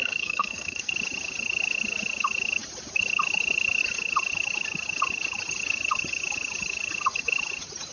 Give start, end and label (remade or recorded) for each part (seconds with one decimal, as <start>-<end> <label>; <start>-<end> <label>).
0.0-0.9 remade; 0.9-7.9 recorded